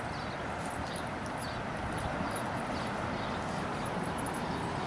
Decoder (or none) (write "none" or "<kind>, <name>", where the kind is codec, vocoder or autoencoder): none